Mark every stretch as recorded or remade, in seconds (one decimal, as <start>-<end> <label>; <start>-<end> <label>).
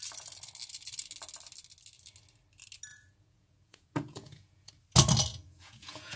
0.0-2.9 recorded; 2.9-4.7 remade; 4.7-5.3 recorded; 5.3-6.2 remade